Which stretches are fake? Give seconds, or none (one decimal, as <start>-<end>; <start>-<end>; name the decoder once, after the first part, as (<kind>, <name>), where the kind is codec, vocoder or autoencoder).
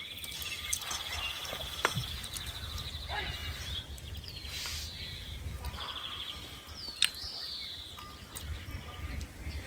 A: none